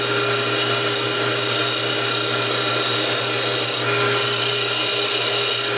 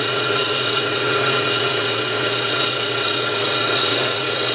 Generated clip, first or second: second